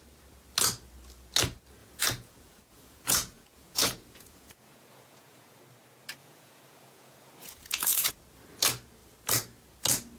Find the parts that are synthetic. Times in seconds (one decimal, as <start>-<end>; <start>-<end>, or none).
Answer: 1.8-5.6; 6.2-8.1